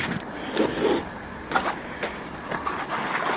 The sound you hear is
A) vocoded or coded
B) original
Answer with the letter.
A